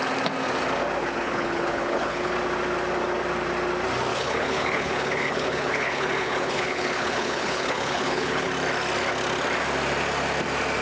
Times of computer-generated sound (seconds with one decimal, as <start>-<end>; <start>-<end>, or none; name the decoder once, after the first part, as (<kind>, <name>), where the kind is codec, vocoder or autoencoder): 1.0-2.3 (codec, HILCodec); 4.1-8.5